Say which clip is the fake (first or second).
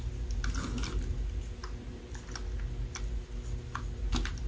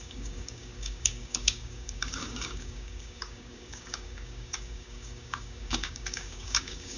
second